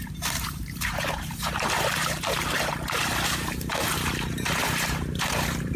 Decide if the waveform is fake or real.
fake